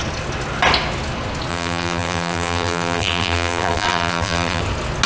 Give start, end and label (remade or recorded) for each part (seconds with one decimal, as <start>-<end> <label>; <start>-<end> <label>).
0.0-1.5 recorded; 1.5-4.6 remade; 4.6-5.1 recorded